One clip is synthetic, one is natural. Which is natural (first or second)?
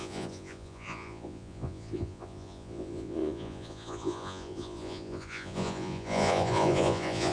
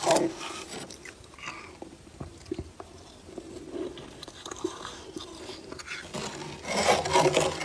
second